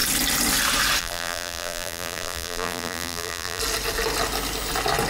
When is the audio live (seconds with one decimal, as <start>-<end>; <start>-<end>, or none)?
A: 0.0-1.0; 3.6-5.1